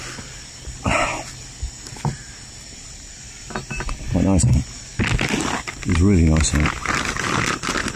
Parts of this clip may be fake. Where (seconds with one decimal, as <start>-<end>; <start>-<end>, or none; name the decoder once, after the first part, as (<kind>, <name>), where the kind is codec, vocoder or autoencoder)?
none